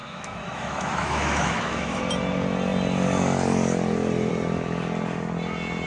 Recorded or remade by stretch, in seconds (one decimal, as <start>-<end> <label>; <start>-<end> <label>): 0.0-2.0 remade; 2.0-5.9 recorded